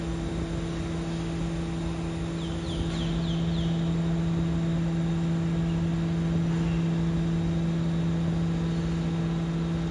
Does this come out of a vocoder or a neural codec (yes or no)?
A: no